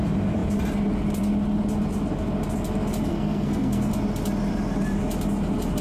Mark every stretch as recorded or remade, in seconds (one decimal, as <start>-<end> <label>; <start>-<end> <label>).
0.0-3.1 recorded; 3.1-3.9 remade; 3.9-5.8 recorded